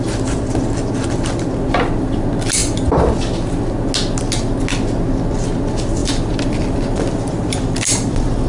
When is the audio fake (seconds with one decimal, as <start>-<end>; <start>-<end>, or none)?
6.0-8.5